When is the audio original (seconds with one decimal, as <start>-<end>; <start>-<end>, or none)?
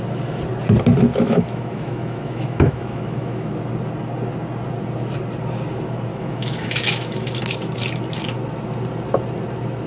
0.0-1.1; 3.6-6.1; 7.4-9.9